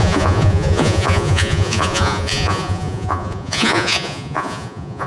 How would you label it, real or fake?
fake